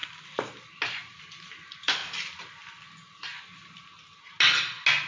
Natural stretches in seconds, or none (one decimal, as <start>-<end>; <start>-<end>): 0.0-1.2; 2.0-5.1